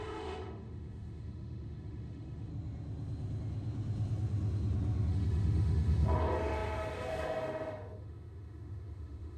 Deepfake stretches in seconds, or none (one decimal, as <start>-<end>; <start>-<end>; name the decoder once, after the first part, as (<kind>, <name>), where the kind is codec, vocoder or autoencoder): 0.0-2.5 (autoencoder, DAC-VAE); 5.1-9.4